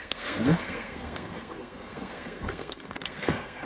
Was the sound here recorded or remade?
remade